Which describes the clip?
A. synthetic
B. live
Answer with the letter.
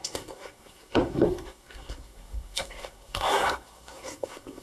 A